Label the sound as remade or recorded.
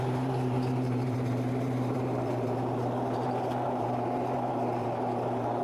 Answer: remade